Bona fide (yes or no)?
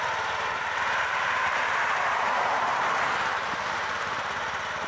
no